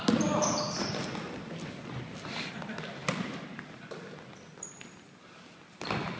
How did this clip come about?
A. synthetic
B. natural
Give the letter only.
B